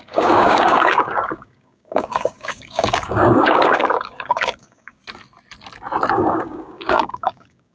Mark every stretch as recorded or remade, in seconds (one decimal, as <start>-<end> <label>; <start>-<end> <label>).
0.0-5.0 remade; 5.0-6.1 recorded; 6.1-7.7 remade